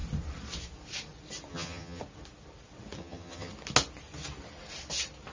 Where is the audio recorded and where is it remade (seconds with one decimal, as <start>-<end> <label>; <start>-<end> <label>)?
0.0-1.5 recorded; 1.5-2.0 remade; 2.0-3.0 recorded; 3.0-3.5 remade; 3.5-5.3 recorded